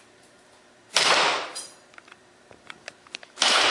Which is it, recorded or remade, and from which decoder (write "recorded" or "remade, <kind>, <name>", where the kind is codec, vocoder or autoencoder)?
remade, vocoder, BigVGAN v2